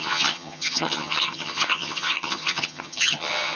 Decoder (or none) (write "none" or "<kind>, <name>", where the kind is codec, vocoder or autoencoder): vocoder, HiFi-GAN